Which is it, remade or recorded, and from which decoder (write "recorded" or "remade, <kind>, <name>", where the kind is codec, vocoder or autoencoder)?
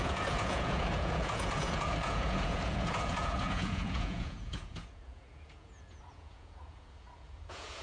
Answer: remade, vocoder, Vocos